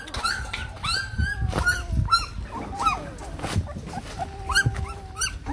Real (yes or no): yes